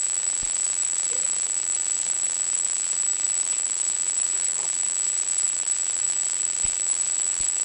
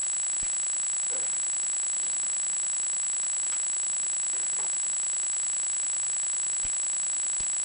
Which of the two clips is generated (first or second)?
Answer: first